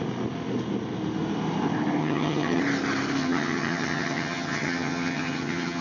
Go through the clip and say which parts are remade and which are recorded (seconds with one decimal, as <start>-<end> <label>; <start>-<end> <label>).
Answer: 0.0-2.0 recorded; 2.0-2.6 remade; 2.6-3.2 recorded; 3.2-5.8 remade